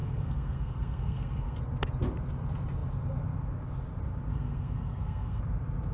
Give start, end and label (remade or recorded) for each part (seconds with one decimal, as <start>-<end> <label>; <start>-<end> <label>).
0.0-1.6 remade; 1.6-4.3 recorded; 4.3-5.4 remade; 5.4-5.9 recorded